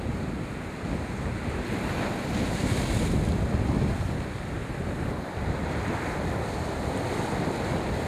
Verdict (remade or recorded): recorded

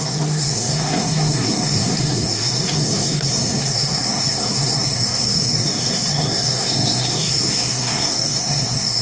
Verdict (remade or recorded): remade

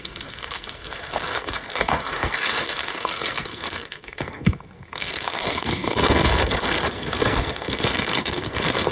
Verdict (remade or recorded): remade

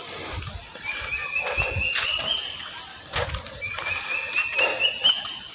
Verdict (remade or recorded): recorded